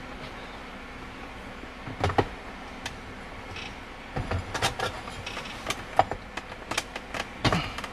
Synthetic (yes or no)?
no